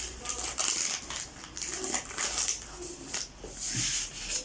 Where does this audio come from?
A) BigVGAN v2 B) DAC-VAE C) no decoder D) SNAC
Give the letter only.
C